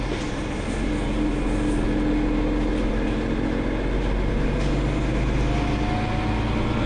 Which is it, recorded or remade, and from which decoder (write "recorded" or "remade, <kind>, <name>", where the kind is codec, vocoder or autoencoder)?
recorded